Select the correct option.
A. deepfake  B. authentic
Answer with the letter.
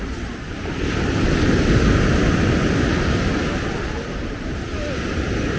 B